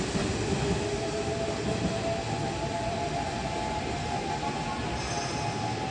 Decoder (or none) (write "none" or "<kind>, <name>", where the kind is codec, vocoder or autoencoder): none